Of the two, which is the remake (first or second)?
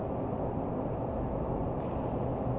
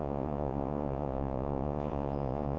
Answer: second